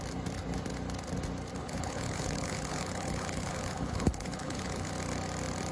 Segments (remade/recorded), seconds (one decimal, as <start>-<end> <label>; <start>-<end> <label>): 0.0-1.6 recorded; 1.6-4.9 remade; 4.9-5.7 recorded